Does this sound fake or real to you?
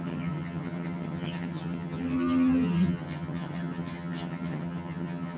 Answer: fake